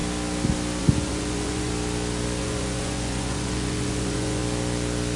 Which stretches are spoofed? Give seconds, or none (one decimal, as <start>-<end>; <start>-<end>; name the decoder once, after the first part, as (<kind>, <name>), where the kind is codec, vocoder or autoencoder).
0.8-1.7 (vocoder, Vocos); 2.4-4.4

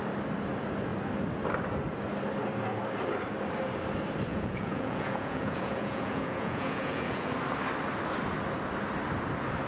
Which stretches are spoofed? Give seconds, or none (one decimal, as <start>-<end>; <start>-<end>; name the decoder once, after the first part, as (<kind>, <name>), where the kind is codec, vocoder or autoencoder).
4.3-7.3 (vocoder, Vocos)

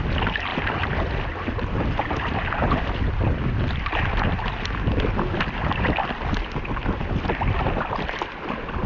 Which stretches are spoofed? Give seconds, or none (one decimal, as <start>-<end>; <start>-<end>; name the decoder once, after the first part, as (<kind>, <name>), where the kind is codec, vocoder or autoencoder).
none

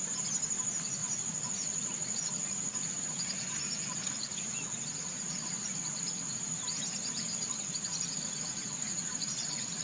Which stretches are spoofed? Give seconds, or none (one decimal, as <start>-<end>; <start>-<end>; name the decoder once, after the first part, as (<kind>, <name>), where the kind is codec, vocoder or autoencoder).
1.0-2.9 (vocoder, Vocos); 4.0-6.5; 7.5-9.8